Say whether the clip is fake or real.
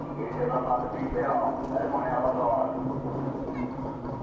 fake